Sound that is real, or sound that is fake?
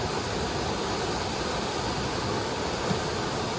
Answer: real